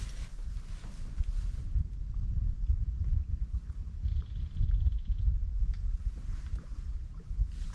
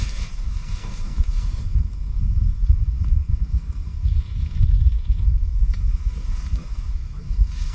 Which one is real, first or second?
first